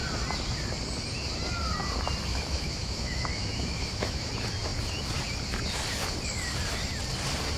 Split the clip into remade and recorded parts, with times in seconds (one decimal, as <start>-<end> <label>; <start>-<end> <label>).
0.0-2.3 recorded; 2.3-4.3 remade; 4.3-7.6 recorded